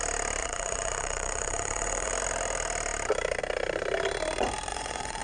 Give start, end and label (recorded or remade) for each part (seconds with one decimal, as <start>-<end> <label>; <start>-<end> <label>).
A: 0.0-0.4 recorded; 0.4-2.1 remade; 2.1-4.7 recorded; 4.7-5.2 remade